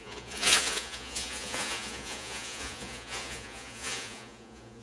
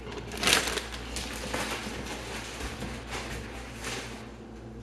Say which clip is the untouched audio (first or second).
second